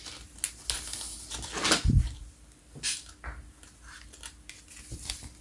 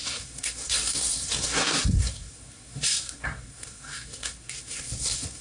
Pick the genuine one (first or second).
first